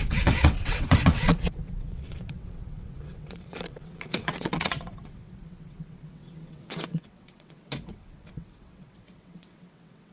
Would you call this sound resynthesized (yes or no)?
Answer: yes